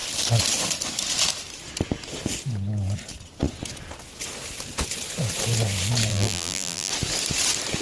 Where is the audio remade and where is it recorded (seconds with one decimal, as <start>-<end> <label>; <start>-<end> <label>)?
0.0-6.1 recorded; 6.1-6.9 remade; 6.9-7.8 recorded